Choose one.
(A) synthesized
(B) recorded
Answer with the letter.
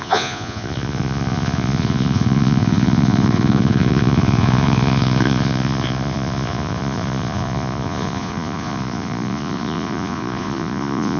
A